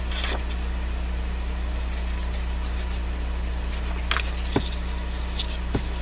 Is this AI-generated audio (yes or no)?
no